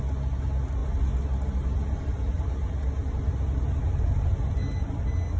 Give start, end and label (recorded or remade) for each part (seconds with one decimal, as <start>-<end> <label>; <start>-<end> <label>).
0.0-5.4 recorded